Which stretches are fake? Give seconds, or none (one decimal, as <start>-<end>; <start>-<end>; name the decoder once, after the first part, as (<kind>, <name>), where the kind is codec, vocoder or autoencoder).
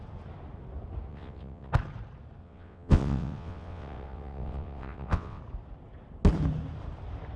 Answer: 1.1-1.7 (vocoder, WaveNeXt); 2.4-5.4